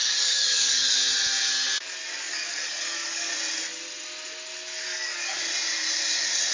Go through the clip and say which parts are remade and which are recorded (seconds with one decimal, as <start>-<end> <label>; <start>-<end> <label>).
0.0-1.0 remade; 1.0-2.2 recorded; 2.2-3.3 remade; 3.3-4.8 recorded; 4.8-5.4 remade; 5.4-6.5 recorded